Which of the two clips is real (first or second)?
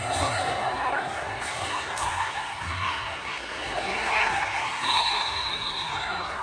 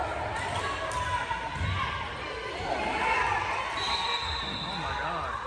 second